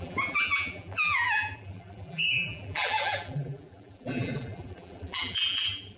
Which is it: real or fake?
fake